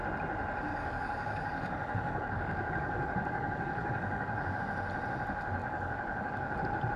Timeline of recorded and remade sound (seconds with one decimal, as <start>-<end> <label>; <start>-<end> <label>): 0.0-0.7 recorded; 0.7-4.6 remade; 4.6-5.6 recorded; 5.6-6.6 remade; 6.6-7.0 recorded

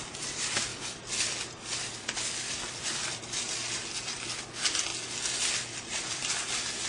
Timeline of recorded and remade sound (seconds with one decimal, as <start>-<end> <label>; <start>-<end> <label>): 0.0-4.9 remade; 4.9-5.8 recorded; 5.8-6.9 remade

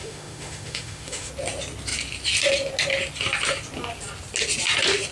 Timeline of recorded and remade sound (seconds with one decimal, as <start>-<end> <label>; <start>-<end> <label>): 0.0-1.3 remade; 1.3-5.1 recorded

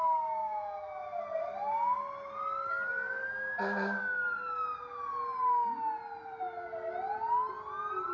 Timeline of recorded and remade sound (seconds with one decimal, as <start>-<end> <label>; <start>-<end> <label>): 0.0-0.4 recorded; 0.4-1.2 remade; 1.2-8.1 recorded

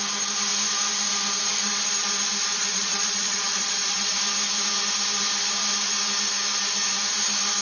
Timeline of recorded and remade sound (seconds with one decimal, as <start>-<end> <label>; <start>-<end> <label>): 0.0-2.5 recorded; 2.5-4.2 remade; 4.2-7.6 recorded

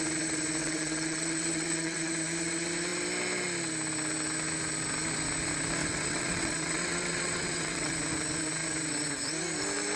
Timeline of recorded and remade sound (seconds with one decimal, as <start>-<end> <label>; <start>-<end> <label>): 0.0-0.6 recorded; 0.6-2.1 remade; 2.1-5.8 recorded; 5.8-7.9 remade; 7.9-10.0 recorded

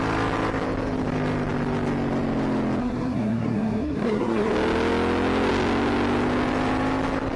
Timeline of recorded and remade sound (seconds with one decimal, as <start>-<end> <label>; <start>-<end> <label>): 0.0-2.8 recorded; 2.8-4.5 remade; 4.5-7.4 recorded

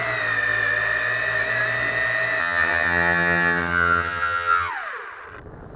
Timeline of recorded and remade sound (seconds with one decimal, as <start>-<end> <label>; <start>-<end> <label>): 0.0-2.4 recorded; 2.4-4.7 remade; 4.7-5.8 recorded